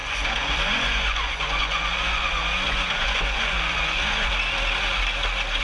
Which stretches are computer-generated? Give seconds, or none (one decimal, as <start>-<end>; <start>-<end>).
0.0-4.3